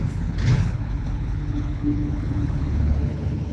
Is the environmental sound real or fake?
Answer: fake